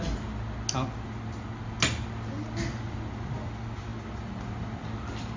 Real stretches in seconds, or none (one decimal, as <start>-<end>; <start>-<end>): 0.0-5.4